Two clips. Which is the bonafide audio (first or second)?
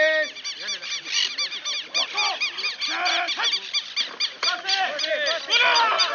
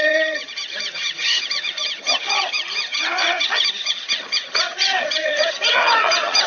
first